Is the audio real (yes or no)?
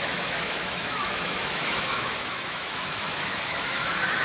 no